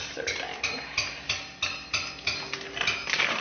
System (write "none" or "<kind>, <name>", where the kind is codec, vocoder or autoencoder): none